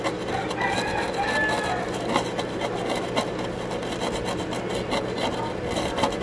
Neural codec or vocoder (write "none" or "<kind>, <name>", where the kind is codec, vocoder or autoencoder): none